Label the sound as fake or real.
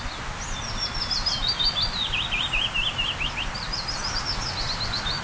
real